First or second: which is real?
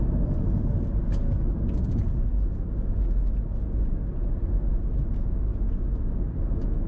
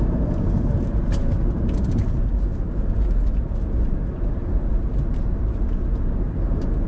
first